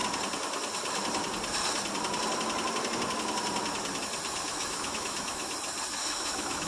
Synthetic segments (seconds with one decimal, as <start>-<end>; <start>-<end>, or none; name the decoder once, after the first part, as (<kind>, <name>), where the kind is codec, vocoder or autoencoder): 4.5-5.5 (autoencoder, DAC-VAE); 6.0-6.7